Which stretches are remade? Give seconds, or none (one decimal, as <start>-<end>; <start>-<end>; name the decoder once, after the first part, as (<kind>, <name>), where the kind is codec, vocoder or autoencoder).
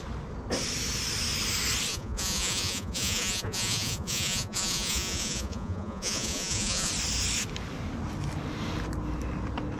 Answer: 1.9-6.9 (vocoder, Vocos)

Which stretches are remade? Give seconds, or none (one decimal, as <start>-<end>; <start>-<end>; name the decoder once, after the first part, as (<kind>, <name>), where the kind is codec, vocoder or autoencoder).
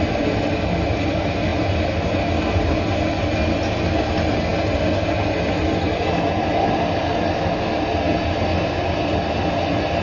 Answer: none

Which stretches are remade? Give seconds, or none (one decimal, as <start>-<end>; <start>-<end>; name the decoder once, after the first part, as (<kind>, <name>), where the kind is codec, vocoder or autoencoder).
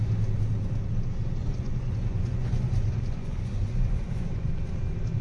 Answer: 1.4-4.5 (vocoder, Vocos)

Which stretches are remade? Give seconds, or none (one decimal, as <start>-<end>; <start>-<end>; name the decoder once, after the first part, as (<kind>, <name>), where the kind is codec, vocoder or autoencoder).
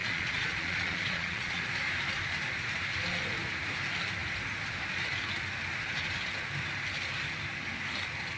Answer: 0.0-1.7 (vocoder, Vocos)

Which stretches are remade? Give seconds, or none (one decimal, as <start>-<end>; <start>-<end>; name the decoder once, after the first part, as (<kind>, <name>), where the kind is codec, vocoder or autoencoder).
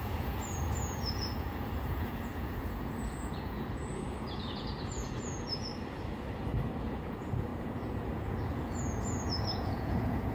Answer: 0.0-5.7 (vocoder, Vocos); 6.8-10.3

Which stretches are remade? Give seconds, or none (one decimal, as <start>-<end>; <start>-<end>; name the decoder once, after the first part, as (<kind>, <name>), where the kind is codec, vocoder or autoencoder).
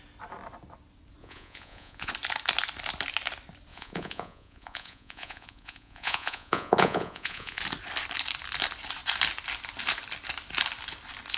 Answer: 1.2-2.1 (vocoder, Vocos); 3.7-7.6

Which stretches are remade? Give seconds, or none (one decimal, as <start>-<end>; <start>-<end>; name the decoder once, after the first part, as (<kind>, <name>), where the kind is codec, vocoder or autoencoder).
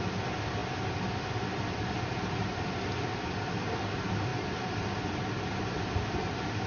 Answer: none